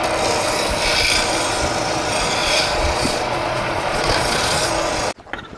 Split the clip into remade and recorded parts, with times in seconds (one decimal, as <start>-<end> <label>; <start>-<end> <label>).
0.0-2.4 recorded; 2.4-4.7 remade; 4.7-5.6 recorded